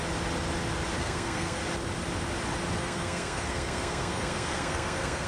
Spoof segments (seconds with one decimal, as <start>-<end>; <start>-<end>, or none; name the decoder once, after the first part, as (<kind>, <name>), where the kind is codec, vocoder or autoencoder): 1.0-1.6 (codec, SNAC); 2.8-5.3